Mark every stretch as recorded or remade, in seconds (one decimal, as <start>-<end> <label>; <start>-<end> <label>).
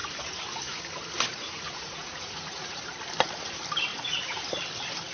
0.0-0.8 remade; 0.8-1.3 recorded; 1.3-2.8 remade; 2.8-3.9 recorded; 3.9-4.4 remade; 4.4-5.1 recorded